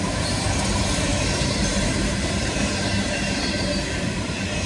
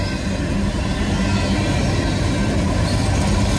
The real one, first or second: second